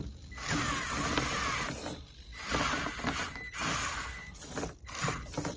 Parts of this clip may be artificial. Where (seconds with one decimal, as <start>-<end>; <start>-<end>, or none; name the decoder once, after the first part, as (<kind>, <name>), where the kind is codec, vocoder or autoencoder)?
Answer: 2.5-3.9 (vocoder, BigVGAN v2)